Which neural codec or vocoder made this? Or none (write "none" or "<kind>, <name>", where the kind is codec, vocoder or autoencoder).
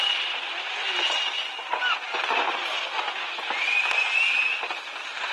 none